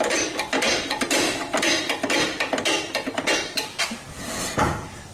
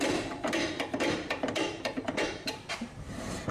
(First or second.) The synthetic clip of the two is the second